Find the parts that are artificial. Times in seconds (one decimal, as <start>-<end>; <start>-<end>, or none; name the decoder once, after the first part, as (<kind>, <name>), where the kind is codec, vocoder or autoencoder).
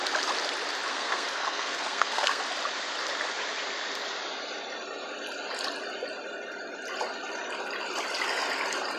0.9-2.4 (codec, SNAC)